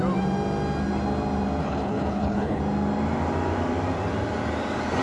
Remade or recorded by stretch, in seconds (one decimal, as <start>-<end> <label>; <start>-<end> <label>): 0.0-1.6 recorded; 1.6-2.6 remade; 2.6-5.0 recorded